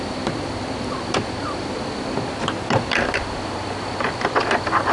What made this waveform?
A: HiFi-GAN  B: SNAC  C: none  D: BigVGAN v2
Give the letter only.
C